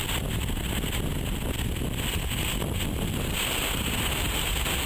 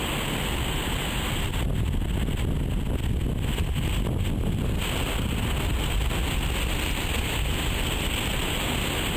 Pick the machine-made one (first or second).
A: first